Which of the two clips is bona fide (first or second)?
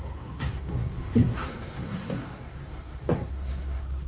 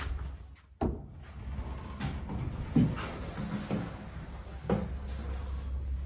second